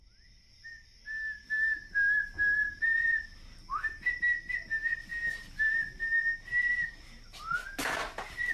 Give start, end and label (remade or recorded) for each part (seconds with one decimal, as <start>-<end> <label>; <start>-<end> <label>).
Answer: 0.0-8.5 recorded

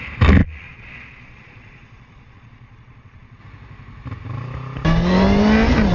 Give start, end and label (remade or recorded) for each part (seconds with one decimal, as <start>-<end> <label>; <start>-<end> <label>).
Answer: 0.0-0.4 recorded; 0.4-3.4 remade; 3.4-5.9 recorded

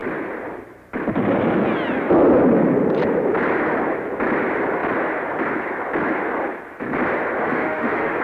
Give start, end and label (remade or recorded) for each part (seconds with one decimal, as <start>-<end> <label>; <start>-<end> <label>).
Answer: 0.0-7.4 recorded; 7.4-8.2 remade

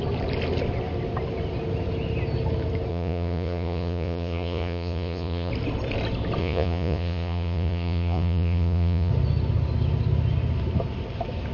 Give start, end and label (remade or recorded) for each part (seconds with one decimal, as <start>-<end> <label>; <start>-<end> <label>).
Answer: 0.0-2.9 recorded; 2.9-5.5 remade; 5.5-6.4 recorded; 6.4-9.1 remade; 9.1-11.5 recorded

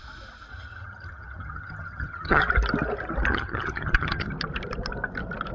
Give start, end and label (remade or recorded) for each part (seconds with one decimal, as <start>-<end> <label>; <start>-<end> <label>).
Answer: 0.0-0.5 recorded; 0.5-2.4 remade; 2.4-3.3 recorded; 3.3-4.3 remade; 4.3-5.5 recorded

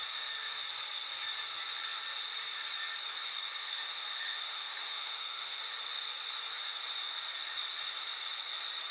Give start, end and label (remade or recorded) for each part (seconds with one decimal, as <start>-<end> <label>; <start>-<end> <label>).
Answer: 0.0-3.6 recorded; 3.6-5.6 remade; 5.6-8.9 recorded